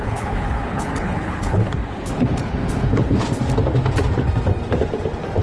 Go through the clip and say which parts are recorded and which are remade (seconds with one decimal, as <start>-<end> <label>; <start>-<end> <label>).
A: 0.0-3.2 remade; 3.2-5.4 recorded